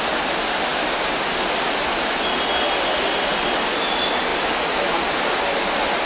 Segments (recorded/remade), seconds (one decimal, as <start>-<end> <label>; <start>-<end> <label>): 0.0-6.1 recorded